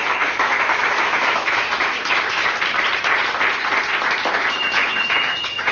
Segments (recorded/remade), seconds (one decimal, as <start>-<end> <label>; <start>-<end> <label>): 0.0-2.4 remade; 2.4-4.5 recorded; 4.5-5.7 remade